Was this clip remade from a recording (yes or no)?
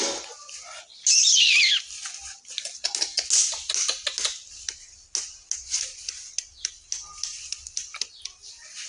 no